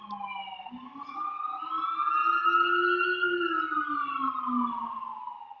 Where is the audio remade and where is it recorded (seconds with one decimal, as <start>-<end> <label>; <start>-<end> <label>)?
0.0-1.1 recorded; 1.1-1.6 remade; 1.6-5.6 recorded